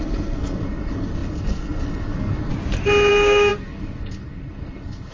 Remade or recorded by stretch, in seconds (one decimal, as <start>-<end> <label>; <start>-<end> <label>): 0.0-2.5 remade; 2.5-3.1 recorded; 3.1-5.1 remade